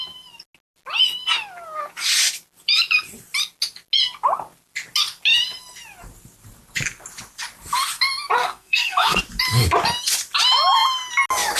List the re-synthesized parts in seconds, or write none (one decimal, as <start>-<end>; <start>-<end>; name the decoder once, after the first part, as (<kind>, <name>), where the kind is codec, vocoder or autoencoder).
8.4-9.2 (codec, SNAC)